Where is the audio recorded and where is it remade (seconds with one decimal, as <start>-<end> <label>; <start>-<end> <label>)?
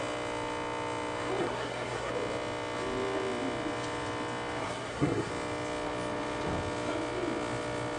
0.0-1.4 recorded; 1.4-2.1 remade; 2.1-4.6 recorded; 4.6-5.3 remade; 5.3-8.0 recorded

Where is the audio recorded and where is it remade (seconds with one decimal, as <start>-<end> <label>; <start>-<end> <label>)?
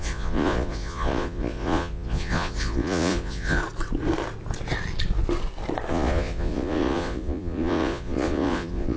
0.0-3.6 remade; 3.6-5.9 recorded; 5.9-9.0 remade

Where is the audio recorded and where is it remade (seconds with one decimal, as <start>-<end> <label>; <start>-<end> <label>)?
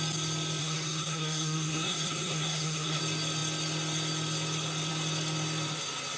0.0-0.6 recorded; 0.6-3.0 remade; 3.0-6.2 recorded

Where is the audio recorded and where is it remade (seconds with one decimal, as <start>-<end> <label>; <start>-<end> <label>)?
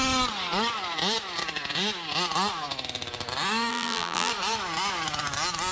0.0-3.7 recorded; 3.7-4.3 remade; 4.3-5.7 recorded